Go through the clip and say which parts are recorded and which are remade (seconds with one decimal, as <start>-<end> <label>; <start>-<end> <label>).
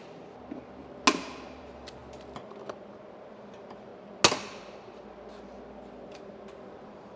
0.0-1.2 recorded; 1.2-2.0 remade; 2.0-3.3 recorded; 3.3-3.9 remade; 3.9-6.7 recorded; 6.7-7.2 remade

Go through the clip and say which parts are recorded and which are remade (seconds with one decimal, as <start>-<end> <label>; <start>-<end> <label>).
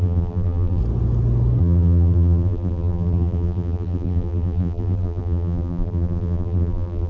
0.0-0.8 remade; 0.8-1.6 recorded; 1.6-7.1 remade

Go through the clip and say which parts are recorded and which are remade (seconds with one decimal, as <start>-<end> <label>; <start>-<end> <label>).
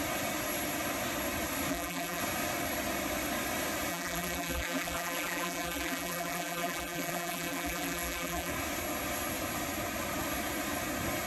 0.0-1.7 recorded; 1.7-2.2 remade; 2.2-3.9 recorded; 3.9-8.5 remade; 8.5-11.3 recorded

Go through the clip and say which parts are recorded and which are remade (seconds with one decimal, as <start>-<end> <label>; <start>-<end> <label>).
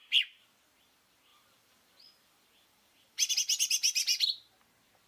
0.0-1.3 recorded; 1.3-3.3 remade; 3.3-5.1 recorded